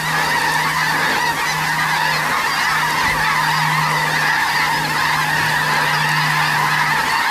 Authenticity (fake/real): real